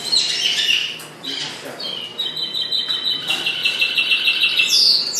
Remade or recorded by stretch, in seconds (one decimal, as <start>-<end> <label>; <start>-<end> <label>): 0.0-0.8 recorded; 0.8-1.4 remade; 1.4-2.1 recorded; 2.1-2.9 remade; 2.9-3.6 recorded; 3.6-4.1 remade; 4.1-5.2 recorded